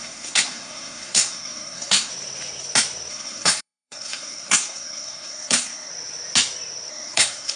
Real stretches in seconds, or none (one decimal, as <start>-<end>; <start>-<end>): 2.1-3.1; 5.9-6.9